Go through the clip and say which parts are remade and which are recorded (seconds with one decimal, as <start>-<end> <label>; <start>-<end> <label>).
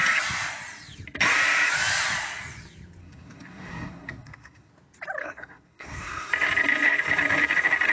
0.0-3.0 recorded; 3.0-4.7 remade; 4.7-5.2 recorded; 5.2-6.3 remade; 6.3-7.9 recorded